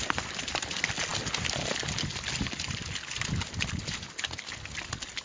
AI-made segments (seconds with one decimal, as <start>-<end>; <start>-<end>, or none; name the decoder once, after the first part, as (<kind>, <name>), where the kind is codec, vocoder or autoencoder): none